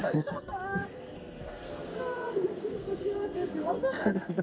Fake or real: fake